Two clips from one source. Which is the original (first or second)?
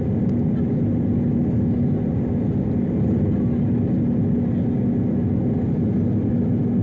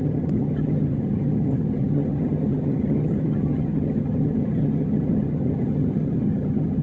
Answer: first